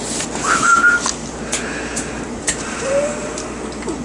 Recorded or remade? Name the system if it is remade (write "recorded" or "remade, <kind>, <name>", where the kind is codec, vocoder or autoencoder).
recorded